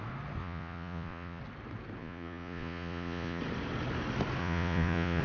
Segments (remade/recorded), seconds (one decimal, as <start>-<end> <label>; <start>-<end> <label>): 0.0-0.4 recorded; 0.4-1.4 remade; 1.4-2.0 recorded; 2.0-3.4 remade; 3.4-4.4 recorded; 4.4-5.2 remade